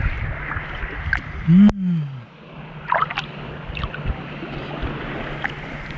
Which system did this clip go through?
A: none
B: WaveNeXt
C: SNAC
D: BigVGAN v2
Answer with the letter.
A